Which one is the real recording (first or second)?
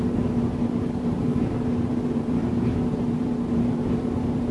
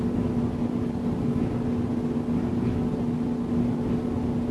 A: second